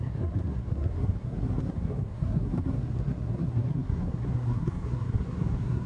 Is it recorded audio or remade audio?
remade